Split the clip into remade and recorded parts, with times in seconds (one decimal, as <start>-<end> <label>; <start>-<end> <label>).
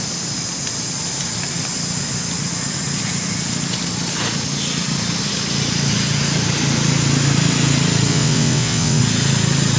0.0-8.1 recorded; 8.1-9.0 remade; 9.0-9.8 recorded